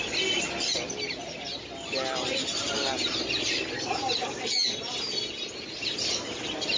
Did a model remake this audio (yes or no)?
no